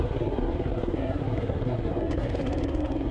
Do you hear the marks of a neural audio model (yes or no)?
yes